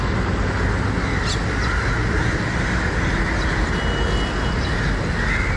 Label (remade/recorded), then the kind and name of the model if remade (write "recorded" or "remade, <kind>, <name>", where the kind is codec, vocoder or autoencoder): recorded